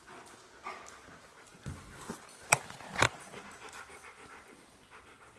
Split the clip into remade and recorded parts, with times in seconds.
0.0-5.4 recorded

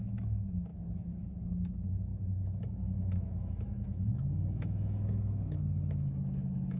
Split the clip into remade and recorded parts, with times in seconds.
0.0-6.8 remade

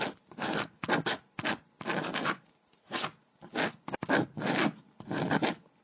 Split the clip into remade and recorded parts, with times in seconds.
0.0-5.8 recorded